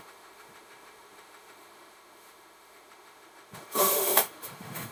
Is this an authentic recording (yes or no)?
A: no